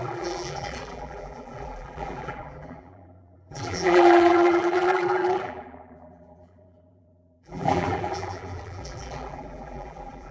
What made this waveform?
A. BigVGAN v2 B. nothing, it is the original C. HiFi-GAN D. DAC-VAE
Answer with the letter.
A